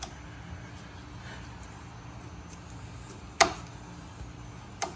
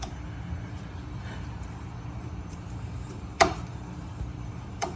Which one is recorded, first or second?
first